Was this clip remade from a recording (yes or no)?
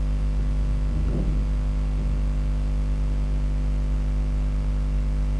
no